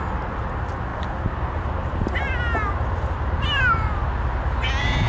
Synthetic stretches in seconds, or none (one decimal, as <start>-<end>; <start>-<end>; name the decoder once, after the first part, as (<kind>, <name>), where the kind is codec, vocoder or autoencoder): 0.9-2.2 (vocoder, BigVGAN v2)